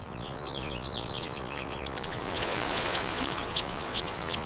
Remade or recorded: remade